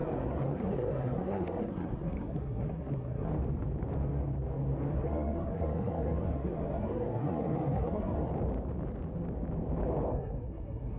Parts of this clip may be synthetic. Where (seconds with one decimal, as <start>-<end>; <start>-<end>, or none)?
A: 0.0-3.3; 4.9-8.3; 10.1-11.0